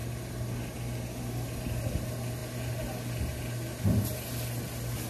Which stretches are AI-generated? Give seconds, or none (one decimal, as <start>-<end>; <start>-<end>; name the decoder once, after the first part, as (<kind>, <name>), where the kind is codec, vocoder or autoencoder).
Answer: none